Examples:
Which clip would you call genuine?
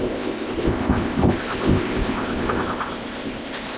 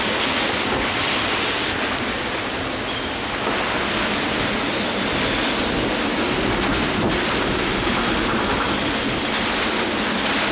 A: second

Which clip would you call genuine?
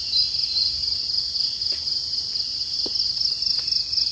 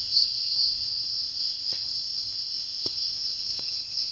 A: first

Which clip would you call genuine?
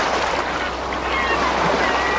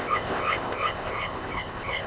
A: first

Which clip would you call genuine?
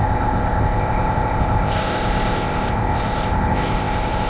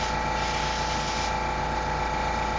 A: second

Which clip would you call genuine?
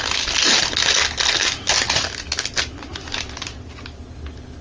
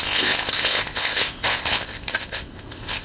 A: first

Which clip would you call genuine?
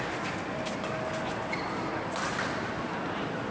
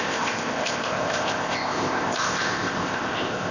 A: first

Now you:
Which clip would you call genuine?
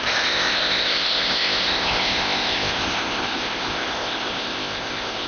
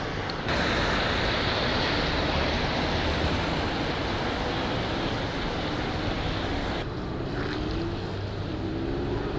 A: second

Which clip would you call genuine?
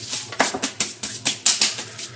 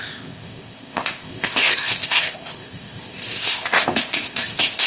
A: first